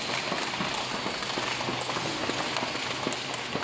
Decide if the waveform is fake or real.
real